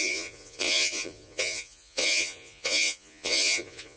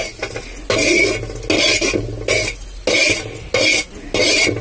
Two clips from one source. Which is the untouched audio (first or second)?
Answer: second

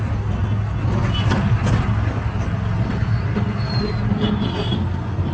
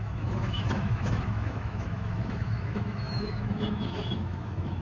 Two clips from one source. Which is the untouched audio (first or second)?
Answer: first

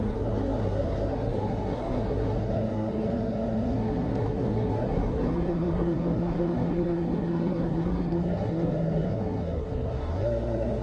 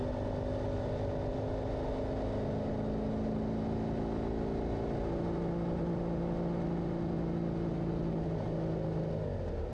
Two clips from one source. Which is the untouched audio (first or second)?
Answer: second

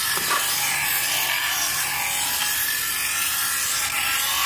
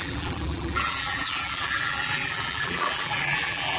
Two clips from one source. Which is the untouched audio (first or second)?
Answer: first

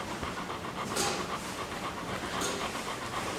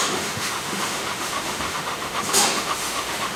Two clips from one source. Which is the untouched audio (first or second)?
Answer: first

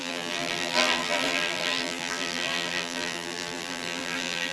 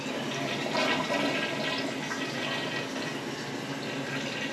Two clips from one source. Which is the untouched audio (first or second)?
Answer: second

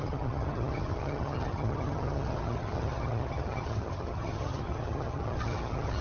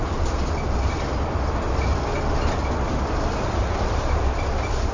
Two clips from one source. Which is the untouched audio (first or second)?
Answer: second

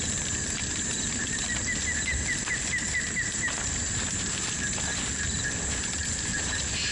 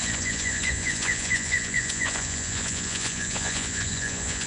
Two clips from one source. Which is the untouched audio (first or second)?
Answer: first